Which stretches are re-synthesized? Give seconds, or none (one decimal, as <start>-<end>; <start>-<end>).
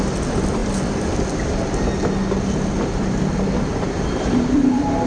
3.7-5.1